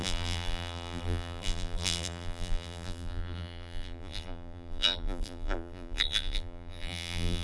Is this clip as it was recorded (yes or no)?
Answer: no